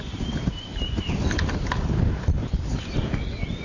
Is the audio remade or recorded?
remade